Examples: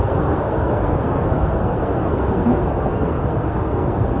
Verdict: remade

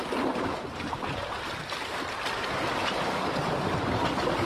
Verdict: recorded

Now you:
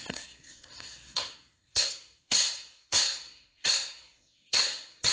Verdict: remade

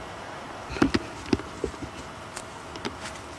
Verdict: recorded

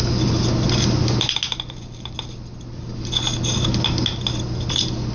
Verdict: recorded